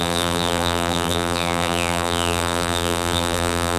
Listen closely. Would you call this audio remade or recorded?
remade